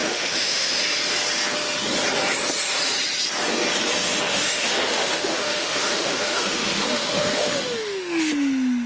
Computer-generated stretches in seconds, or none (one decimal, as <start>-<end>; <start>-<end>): 0.0-0.8; 4.3-8.3